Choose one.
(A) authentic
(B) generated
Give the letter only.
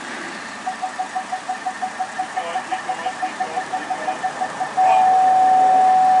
A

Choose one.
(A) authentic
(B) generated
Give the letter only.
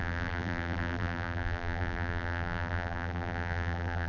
B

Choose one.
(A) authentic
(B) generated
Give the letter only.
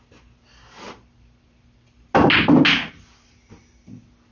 A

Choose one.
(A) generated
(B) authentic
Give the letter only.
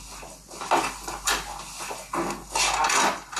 B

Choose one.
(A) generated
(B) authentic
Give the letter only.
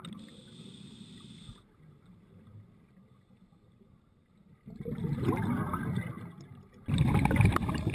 B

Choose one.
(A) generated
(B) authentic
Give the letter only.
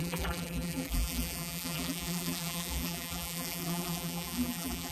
A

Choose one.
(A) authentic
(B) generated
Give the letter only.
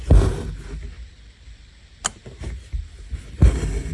A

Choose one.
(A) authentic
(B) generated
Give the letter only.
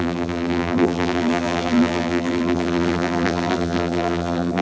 B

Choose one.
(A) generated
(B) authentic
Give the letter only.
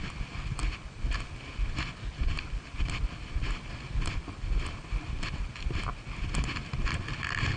B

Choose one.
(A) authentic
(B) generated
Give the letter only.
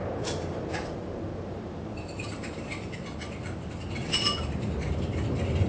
B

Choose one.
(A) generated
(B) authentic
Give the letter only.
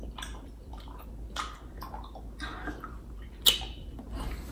B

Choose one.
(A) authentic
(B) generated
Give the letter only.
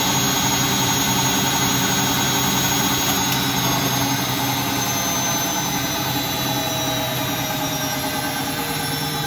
A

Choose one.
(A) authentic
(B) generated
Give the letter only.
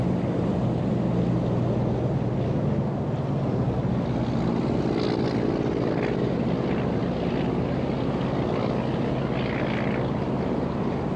A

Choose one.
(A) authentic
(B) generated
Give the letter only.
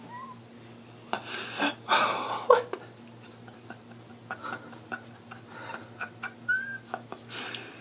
A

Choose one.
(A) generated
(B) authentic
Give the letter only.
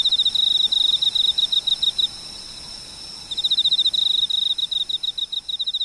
B